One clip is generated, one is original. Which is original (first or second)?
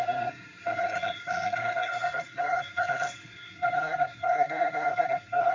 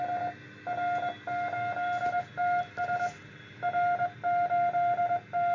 second